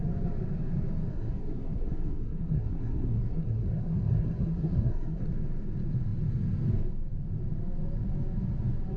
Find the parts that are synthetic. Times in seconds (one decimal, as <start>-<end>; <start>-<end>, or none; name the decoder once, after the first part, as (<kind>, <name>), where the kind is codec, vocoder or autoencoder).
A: 1.1-5.3 (codec, SNAC)